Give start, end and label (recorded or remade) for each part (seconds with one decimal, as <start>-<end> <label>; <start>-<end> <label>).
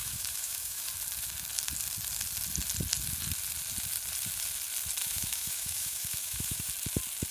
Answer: 0.0-0.8 remade; 0.8-5.0 recorded; 5.0-6.7 remade; 6.7-7.3 recorded